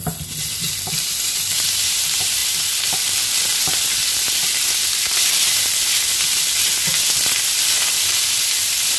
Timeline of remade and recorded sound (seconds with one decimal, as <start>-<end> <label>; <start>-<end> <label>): 0.0-9.0 recorded